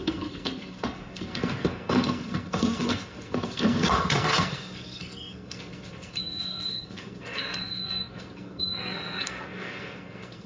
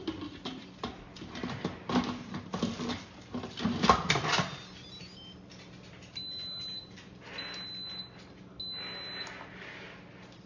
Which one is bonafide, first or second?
second